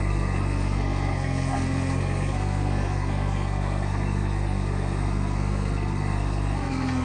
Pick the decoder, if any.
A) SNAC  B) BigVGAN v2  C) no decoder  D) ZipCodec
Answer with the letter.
A